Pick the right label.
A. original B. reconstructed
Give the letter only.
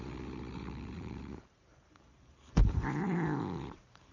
B